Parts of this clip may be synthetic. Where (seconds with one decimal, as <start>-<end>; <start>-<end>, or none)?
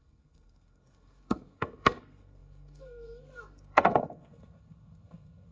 0.0-5.5